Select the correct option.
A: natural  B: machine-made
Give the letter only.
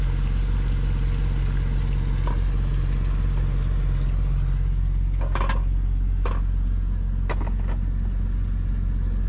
A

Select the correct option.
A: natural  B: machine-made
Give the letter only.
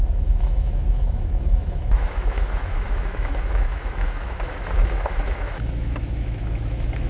B